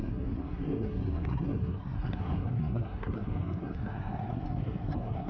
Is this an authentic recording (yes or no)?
no